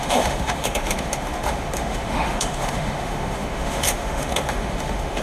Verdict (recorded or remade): remade